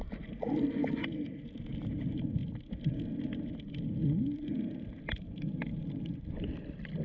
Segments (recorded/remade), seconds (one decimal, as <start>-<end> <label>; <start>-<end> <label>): 0.0-5.7 recorded; 5.7-6.6 remade; 6.6-7.0 recorded

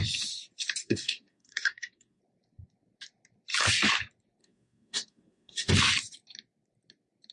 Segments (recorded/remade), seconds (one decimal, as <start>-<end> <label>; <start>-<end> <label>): 0.0-0.8 recorded; 0.8-2.2 remade; 2.2-4.4 recorded; 4.4-5.7 remade; 5.7-7.3 recorded